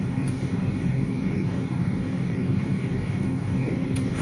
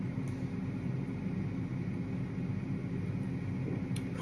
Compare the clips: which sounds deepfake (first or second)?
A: first